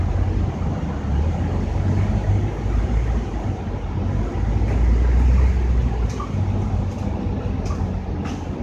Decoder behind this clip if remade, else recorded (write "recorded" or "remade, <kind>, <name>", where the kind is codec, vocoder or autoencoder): recorded